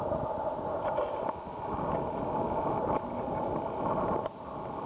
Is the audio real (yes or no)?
yes